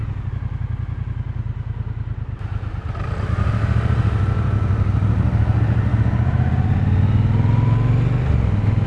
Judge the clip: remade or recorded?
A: recorded